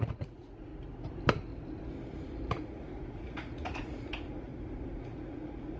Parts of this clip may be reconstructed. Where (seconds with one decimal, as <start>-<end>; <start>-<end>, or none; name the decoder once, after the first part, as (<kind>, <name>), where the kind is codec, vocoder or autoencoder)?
0.0-0.7 (vocoder, Vocos); 2.5-4.5; 5.0-5.8